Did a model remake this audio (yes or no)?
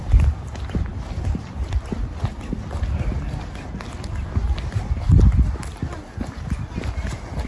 no